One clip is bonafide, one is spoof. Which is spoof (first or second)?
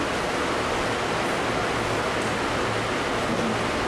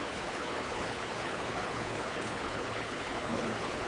second